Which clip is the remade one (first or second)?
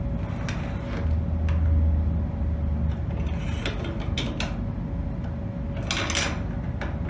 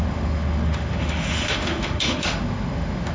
second